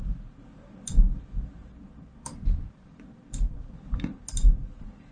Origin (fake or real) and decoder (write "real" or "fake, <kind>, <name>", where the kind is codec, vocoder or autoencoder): real